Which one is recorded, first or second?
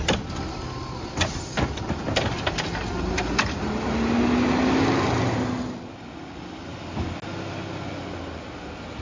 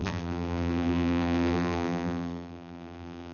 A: first